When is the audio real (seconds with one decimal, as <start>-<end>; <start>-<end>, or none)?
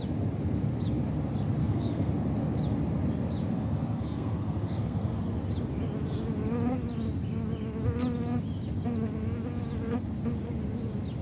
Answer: 0.0-1.6; 2.1-3.4; 5.4-11.2